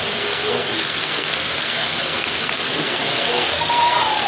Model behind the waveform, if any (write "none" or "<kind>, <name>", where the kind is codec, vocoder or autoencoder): codec, SNAC